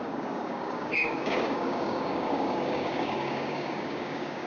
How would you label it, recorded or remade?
remade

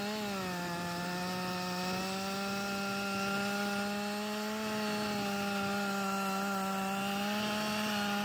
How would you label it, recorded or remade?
recorded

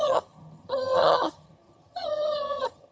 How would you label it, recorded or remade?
remade